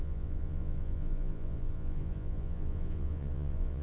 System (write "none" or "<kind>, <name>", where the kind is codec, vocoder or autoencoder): vocoder, Vocos